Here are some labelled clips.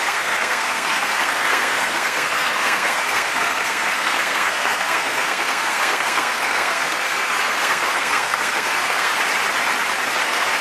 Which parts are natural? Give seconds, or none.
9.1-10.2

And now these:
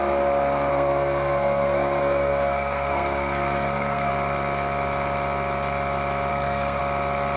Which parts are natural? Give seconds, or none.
0.0-0.7; 4.1-6.3; 6.8-7.4

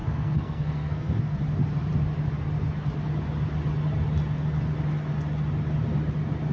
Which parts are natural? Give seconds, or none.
1.4-6.5

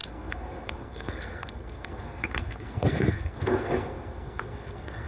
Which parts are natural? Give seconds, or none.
none